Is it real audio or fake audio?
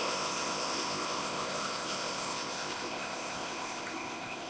fake